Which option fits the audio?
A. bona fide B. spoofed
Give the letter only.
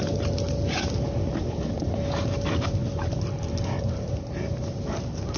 A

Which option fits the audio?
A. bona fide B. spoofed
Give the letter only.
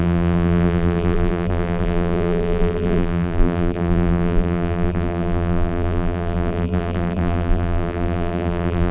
B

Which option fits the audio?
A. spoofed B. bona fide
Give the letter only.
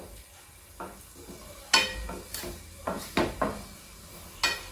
B